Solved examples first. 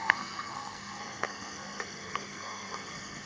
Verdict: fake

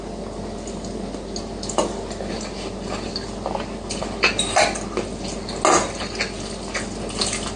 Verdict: real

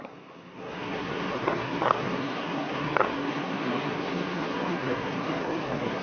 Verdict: fake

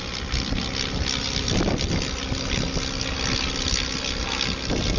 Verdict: real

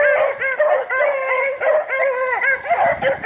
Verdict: real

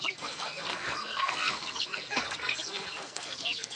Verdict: fake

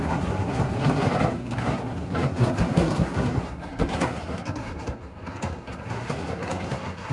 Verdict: fake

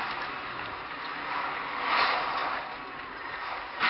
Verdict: real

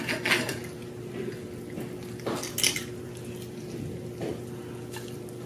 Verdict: real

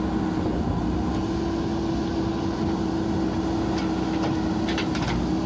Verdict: real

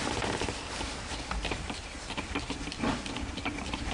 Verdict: real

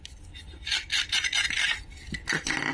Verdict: real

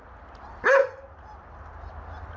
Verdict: real